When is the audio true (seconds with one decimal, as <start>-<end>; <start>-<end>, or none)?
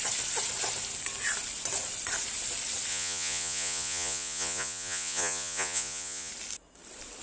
0.0-2.9; 6.3-7.2